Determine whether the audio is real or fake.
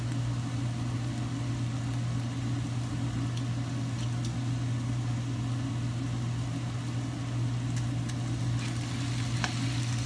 real